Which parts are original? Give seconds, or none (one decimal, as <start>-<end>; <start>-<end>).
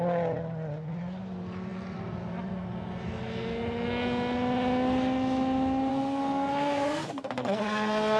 0.0-5.9